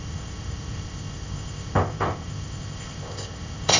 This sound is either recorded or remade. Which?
remade